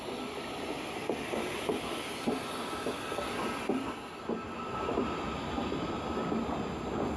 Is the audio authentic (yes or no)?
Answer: yes